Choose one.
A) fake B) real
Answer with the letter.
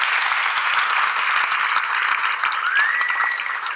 B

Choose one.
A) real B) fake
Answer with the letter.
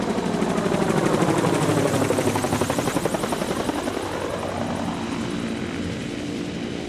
A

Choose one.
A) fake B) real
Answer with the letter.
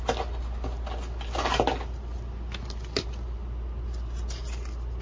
B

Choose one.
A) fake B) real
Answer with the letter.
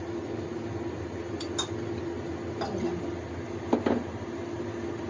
B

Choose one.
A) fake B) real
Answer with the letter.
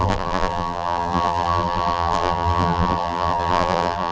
A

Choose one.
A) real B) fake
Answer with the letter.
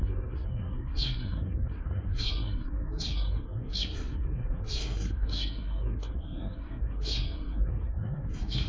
B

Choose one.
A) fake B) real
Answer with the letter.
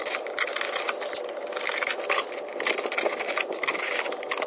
B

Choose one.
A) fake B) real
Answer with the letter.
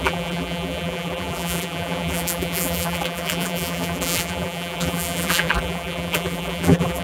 A